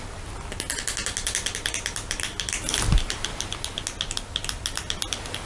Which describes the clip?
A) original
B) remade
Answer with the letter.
A